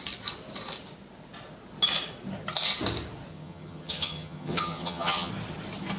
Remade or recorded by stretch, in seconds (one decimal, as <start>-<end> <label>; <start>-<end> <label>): 0.0-3.3 recorded; 3.3-5.3 remade; 5.3-6.0 recorded